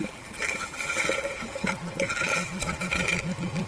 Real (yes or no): no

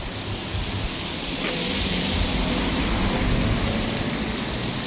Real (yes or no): yes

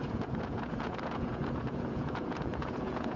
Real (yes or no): no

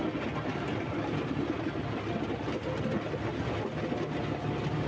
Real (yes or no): yes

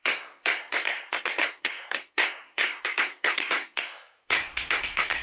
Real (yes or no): no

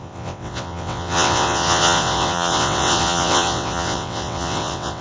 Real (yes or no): no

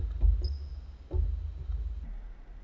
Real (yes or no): yes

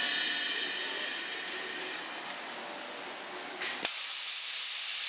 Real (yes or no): yes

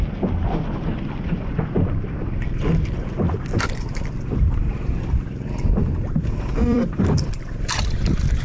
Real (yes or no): no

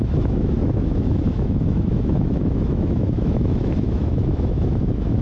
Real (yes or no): no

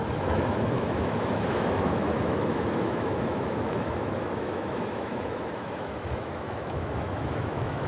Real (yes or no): no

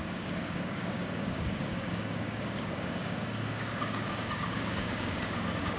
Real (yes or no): no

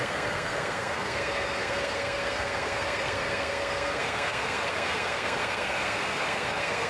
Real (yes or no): no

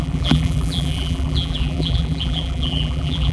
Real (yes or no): no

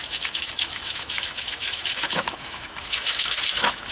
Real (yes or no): no